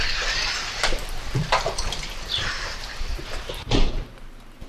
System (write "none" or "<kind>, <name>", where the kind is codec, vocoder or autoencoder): vocoder, BigVGAN v2